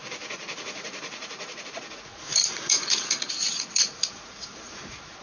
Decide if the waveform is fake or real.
fake